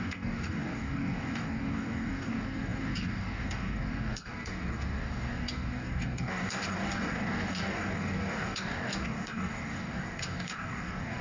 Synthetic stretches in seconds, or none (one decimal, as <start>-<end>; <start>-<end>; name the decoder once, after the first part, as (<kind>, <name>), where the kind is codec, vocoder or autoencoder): 0.0-11.2 (codec, DAC)